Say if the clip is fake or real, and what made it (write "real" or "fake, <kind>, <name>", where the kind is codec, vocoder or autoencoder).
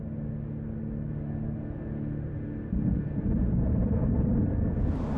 real